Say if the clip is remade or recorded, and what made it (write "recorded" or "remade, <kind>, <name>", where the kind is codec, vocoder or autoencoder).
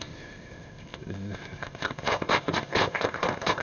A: remade, codec, ZipCodec